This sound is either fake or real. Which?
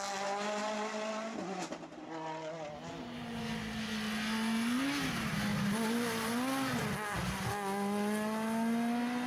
real